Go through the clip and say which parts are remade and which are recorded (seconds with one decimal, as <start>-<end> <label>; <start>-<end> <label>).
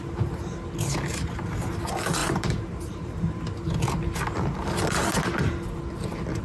0.0-2.2 recorded; 2.2-3.2 remade; 3.2-6.4 recorded